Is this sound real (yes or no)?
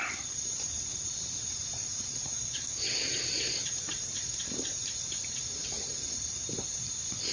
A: no